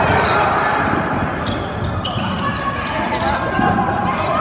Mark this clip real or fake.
real